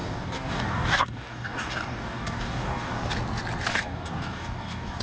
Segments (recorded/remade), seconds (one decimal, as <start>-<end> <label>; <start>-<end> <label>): 0.0-3.0 remade; 3.0-3.7 recorded; 3.7-5.0 remade